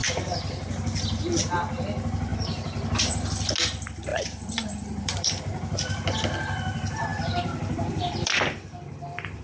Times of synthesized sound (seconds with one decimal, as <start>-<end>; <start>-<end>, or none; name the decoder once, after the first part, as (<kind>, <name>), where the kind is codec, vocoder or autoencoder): 0.0-0.7 (vocoder, BigVGAN v2); 2.3-3.1; 4.1-5.4; 7.1-9.4